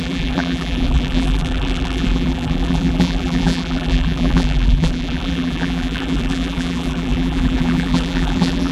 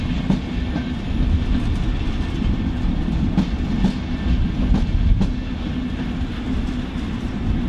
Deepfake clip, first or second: first